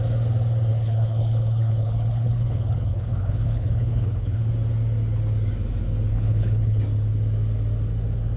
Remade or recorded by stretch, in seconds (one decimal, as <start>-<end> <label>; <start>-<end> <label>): 0.0-0.7 recorded; 0.7-4.5 remade; 4.5-6.1 recorded; 6.1-6.8 remade; 6.8-8.4 recorded